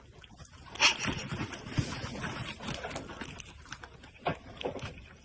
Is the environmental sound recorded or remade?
recorded